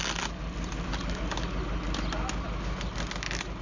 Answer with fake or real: real